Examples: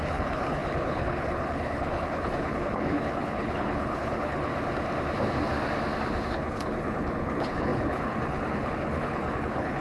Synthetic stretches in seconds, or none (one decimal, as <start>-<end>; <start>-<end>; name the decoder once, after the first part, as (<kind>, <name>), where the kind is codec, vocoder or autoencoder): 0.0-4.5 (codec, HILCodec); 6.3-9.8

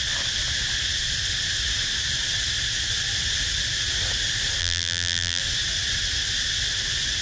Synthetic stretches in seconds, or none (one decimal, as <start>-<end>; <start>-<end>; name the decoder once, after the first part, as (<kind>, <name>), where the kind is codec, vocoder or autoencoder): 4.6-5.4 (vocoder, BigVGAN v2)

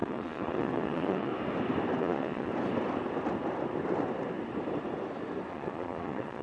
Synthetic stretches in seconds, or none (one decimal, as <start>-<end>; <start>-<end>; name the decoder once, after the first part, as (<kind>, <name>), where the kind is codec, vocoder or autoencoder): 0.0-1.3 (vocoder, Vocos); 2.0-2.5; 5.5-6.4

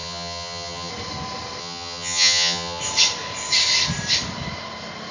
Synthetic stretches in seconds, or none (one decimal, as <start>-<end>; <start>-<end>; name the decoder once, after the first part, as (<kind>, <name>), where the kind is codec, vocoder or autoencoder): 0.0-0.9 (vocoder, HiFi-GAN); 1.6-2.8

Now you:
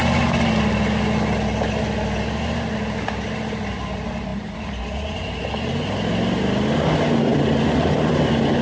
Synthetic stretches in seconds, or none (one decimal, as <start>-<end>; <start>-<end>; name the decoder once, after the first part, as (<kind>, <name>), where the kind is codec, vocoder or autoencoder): none

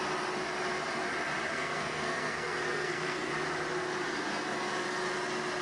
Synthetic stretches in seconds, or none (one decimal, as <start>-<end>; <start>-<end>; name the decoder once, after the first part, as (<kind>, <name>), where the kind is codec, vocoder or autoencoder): 1.5-3.3 (codec, SNAC)

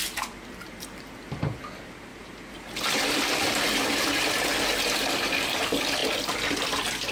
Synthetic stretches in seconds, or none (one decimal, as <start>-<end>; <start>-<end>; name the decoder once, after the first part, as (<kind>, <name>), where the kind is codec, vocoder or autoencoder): none